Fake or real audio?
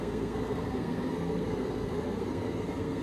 fake